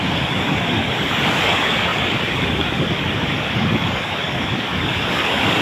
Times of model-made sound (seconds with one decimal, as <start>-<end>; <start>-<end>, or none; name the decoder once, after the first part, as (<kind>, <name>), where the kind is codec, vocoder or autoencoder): 0.0-5.6 (codec, DAC)